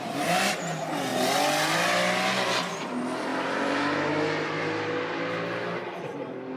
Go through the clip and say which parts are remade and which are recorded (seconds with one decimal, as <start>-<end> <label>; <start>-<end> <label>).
0.0-6.6 recorded